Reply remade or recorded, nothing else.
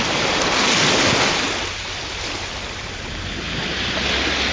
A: recorded